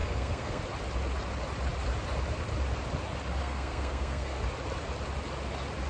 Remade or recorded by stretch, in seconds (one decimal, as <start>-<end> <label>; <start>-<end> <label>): 0.0-0.6 remade; 0.6-3.4 recorded; 3.4-4.4 remade; 4.4-5.9 recorded